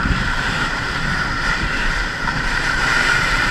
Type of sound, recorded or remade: remade